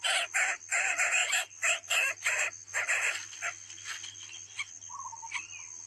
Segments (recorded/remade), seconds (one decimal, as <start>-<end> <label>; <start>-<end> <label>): 0.0-5.9 recorded